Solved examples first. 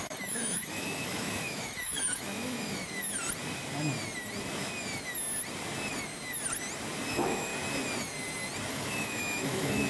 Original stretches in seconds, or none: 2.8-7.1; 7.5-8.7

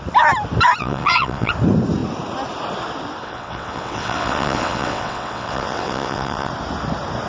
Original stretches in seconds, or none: 0.0-0.8; 1.5-3.2; 6.5-7.3

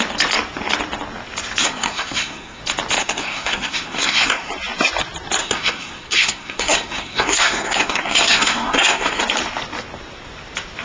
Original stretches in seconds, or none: 0.0-1.6; 2.6-3.0; 4.5-5.4; 9.2-10.8

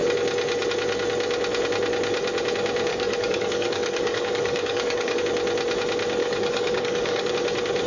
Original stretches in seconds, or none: 0.0-2.9; 5.2-6.2; 7.3-7.9